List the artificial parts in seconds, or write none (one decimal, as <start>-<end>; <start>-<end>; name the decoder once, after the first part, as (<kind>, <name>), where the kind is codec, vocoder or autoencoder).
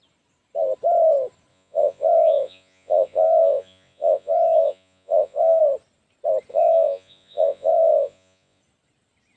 1.5-5.6 (vocoder, Vocos); 6.5-8.6